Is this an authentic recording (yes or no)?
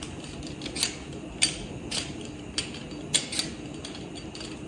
yes